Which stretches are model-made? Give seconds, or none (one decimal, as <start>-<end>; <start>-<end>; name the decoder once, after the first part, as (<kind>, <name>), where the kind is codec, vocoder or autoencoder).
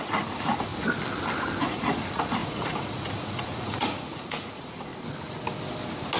0.0-0.7 (vocoder, Vocos); 1.6-4.9